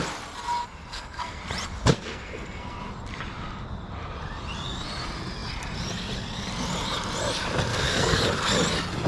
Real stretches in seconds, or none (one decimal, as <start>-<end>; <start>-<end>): 0.0-0.9; 1.4-1.9; 2.8-7.7; 8.2-9.1

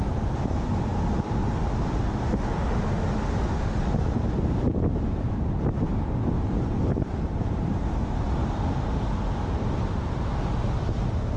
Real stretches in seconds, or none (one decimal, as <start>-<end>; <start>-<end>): 0.0-11.4